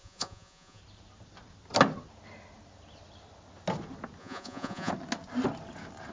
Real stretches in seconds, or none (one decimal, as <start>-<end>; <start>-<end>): 0.8-4.2; 4.9-6.1